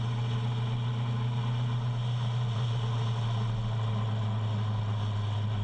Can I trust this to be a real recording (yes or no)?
yes